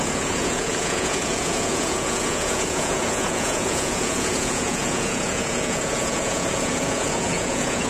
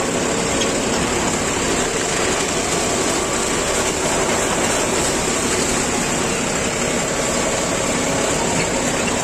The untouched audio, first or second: second